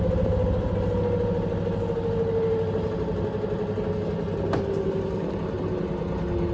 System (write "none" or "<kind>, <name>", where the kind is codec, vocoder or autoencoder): none